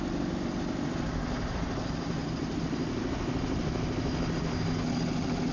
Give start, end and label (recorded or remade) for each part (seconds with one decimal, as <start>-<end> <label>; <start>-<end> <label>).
0.0-2.2 remade; 2.2-4.3 recorded; 4.3-5.5 remade